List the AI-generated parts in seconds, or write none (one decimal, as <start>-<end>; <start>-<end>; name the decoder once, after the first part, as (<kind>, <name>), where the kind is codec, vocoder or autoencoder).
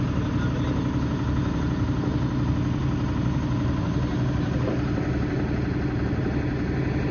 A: none